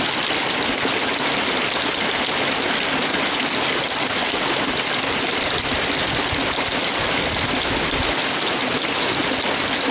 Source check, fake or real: real